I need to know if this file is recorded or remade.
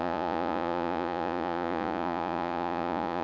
remade